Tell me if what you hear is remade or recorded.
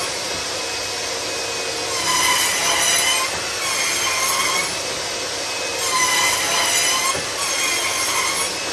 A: recorded